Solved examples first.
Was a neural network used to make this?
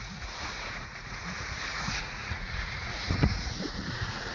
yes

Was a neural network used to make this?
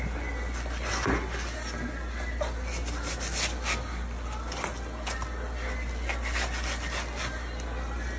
no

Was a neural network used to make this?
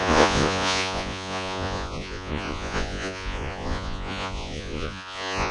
yes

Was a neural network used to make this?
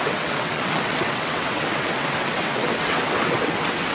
yes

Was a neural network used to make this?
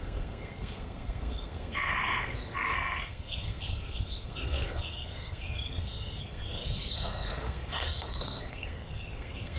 yes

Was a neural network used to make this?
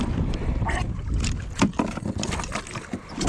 no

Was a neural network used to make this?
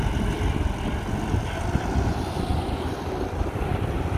yes